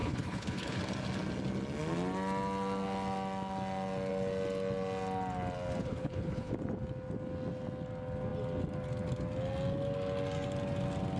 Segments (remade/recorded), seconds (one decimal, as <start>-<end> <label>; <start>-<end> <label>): 0.0-0.8 remade; 0.8-5.8 recorded; 5.8-6.5 remade; 6.5-11.2 recorded